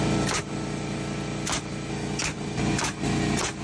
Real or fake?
real